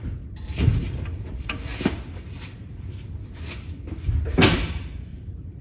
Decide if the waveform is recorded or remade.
remade